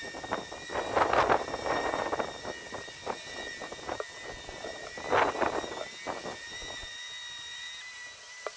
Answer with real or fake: real